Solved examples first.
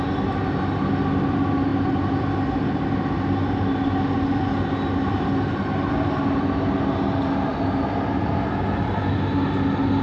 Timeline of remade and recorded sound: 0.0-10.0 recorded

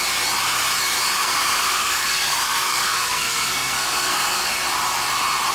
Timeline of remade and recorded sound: 0.0-1.2 recorded; 1.2-4.5 remade; 4.5-5.5 recorded

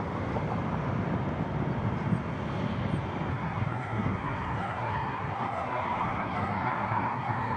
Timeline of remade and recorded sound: 0.0-3.3 recorded; 3.3-7.6 remade

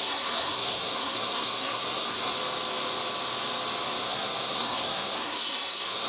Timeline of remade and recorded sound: 0.0-2.3 remade; 2.3-4.0 recorded; 4.0-6.1 remade

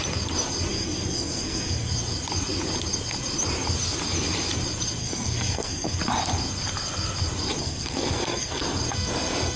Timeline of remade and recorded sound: 0.0-0.7 recorded; 0.7-1.9 remade; 1.9-5.0 recorded; 5.0-6.0 remade; 6.0-7.6 recorded; 7.6-8.6 remade; 8.6-9.6 recorded